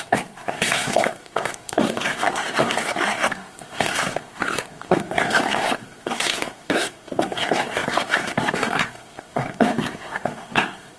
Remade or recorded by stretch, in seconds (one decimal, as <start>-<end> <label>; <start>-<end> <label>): 0.0-11.0 remade